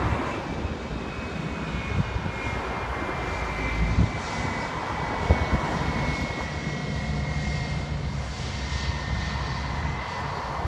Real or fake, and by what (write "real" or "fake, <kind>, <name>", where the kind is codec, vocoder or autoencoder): real